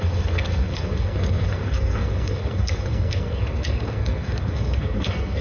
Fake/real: fake